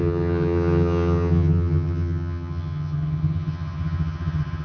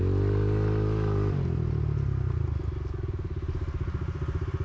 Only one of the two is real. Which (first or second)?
second